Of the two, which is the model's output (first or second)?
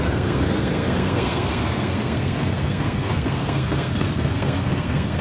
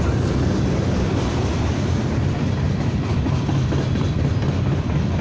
first